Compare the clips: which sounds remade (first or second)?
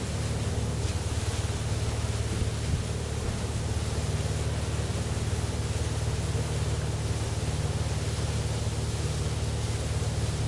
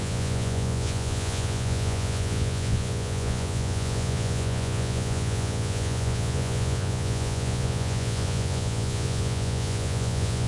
second